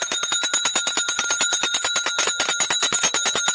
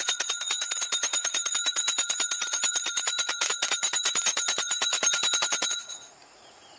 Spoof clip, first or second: second